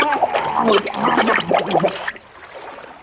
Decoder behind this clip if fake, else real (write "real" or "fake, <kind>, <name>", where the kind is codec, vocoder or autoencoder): real